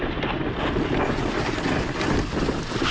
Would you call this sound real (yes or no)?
yes